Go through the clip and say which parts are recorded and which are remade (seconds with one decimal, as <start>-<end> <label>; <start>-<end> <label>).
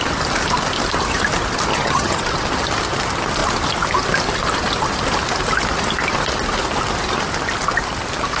0.0-1.7 recorded; 1.7-2.2 remade; 2.2-8.4 recorded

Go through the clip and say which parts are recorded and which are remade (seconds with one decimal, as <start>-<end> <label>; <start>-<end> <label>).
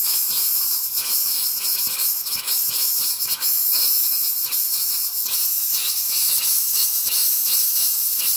0.0-8.4 remade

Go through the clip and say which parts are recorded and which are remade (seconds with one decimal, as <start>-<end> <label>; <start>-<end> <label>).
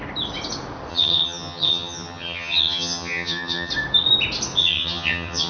0.0-0.9 recorded; 0.9-3.7 remade; 3.7-4.6 recorded; 4.6-5.5 remade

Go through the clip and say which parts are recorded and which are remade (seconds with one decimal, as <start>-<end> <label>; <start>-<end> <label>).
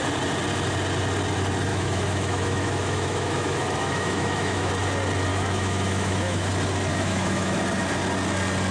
0.0-1.7 recorded; 1.7-4.7 remade; 4.7-5.3 recorded; 5.3-6.5 remade; 6.5-6.9 recorded; 6.9-7.6 remade; 7.6-8.7 recorded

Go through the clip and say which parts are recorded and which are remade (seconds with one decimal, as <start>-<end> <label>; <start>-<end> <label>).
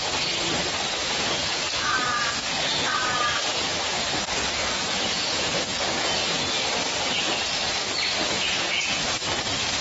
0.0-1.0 recorded; 1.0-4.0 remade; 4.0-4.6 recorded; 4.6-6.4 remade; 6.4-8.2 recorded; 8.2-9.2 remade; 9.2-9.8 recorded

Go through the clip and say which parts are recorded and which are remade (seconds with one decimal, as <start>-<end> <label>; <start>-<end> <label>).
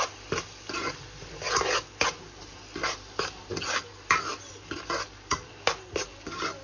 0.0-6.6 recorded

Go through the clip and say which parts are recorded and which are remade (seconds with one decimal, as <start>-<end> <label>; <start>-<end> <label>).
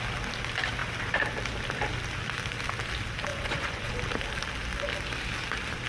0.0-3.3 recorded; 3.3-3.9 remade; 3.9-5.9 recorded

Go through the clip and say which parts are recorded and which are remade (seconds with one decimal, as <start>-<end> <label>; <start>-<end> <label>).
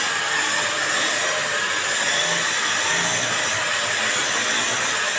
0.0-5.2 recorded